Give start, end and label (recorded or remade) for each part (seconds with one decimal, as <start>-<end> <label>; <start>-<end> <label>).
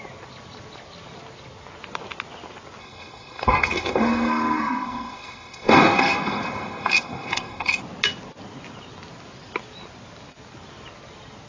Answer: 0.0-2.8 recorded; 2.8-7.8 remade; 7.8-11.5 recorded